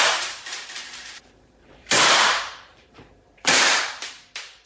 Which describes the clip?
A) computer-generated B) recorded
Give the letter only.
A